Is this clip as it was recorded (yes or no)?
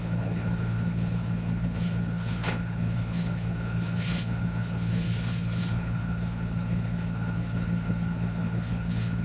no